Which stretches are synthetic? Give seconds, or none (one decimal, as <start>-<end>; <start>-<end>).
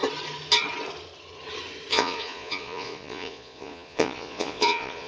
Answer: 1.9-5.1